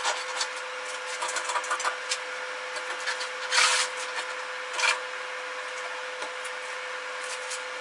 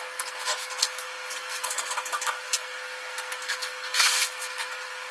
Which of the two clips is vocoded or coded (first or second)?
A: second